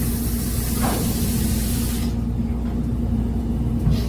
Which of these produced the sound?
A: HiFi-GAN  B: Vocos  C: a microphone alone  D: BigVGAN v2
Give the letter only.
C